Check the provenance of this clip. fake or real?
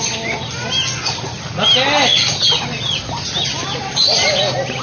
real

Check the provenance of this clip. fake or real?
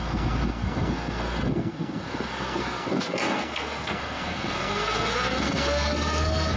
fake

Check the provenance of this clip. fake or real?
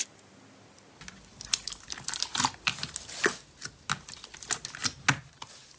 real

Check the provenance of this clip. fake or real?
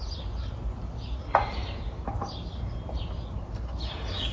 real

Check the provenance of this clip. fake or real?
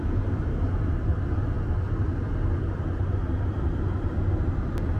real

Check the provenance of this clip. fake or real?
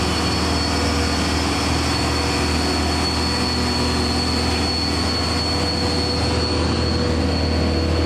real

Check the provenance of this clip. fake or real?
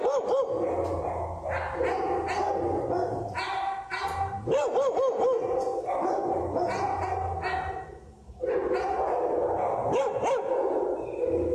real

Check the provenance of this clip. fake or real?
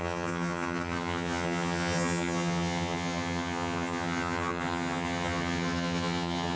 fake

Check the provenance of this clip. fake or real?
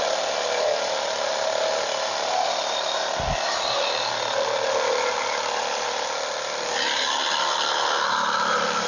real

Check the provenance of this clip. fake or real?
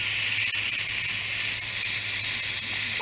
real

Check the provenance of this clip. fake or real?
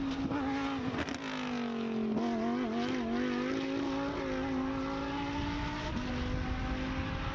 real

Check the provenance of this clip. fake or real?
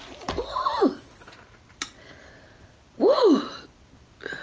real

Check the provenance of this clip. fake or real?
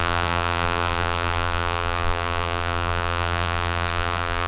fake